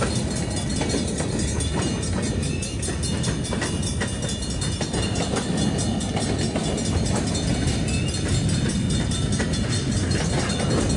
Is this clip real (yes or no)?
yes